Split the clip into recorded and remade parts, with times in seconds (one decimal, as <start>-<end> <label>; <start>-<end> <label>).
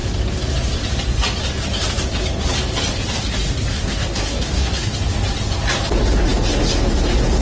0.0-3.7 recorded; 3.7-4.9 remade; 4.9-7.4 recorded